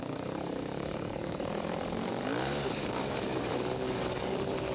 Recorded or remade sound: remade